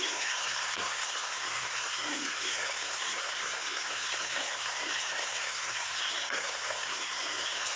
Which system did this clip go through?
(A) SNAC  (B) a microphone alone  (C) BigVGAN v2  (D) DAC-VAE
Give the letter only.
A